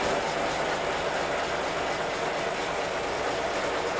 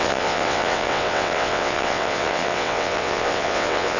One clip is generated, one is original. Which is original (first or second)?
first